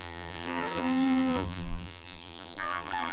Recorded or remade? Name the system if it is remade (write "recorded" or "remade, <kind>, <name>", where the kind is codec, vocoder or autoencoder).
remade, vocoder, BigVGAN v2